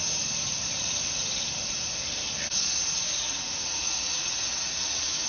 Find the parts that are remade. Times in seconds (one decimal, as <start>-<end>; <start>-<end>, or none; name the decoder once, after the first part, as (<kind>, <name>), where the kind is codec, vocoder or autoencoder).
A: 3.2-5.3 (vocoder, Vocos)